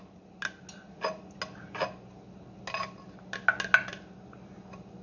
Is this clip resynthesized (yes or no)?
no